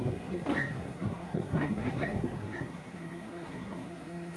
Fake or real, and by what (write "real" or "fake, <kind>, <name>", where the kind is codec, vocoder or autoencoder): fake, codec, SNAC